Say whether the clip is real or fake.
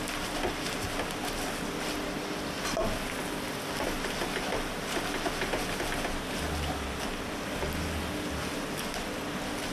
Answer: real